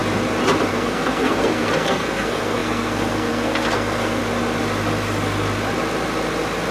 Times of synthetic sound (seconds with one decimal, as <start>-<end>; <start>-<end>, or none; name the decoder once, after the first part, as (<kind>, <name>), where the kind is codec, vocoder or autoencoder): 0.7-4.2 (codec, SNAC)